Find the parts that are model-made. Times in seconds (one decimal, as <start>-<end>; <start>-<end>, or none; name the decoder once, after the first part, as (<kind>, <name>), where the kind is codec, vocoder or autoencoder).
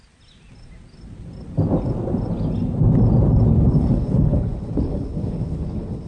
3.7-6.1 (codec, HILCodec)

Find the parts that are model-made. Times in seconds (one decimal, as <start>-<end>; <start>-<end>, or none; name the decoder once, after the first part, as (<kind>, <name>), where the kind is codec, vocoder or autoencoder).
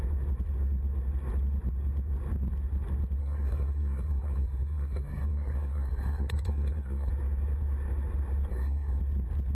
3.2-7.1 (codec, SNAC); 8.5-9.0